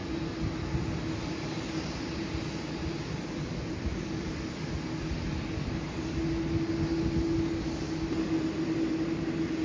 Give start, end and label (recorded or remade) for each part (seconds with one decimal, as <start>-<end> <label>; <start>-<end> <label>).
0.0-9.6 recorded